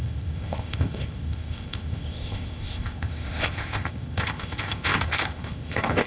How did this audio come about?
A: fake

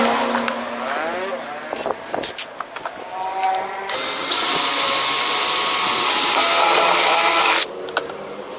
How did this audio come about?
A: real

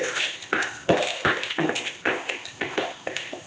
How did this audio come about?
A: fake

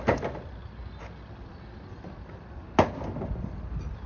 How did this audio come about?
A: real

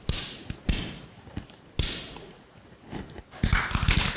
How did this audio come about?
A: real